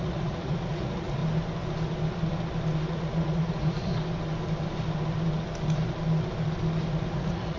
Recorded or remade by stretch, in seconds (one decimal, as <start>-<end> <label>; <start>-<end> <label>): 0.0-1.2 remade; 1.2-2.9 recorded; 2.9-3.9 remade; 3.9-6.9 recorded; 6.9-7.6 remade